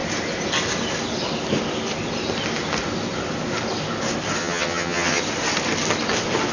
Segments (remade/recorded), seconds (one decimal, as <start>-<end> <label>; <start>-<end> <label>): 0.0-4.4 recorded; 4.4-5.2 remade; 5.2-6.5 recorded